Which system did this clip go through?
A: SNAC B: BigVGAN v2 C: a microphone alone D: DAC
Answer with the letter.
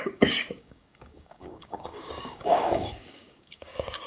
D